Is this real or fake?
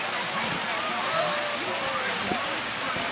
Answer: real